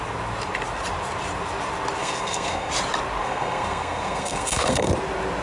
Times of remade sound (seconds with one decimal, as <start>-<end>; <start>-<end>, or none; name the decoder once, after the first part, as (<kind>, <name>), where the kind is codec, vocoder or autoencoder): 2.0-2.7 (codec, SNAC); 3.2-4.9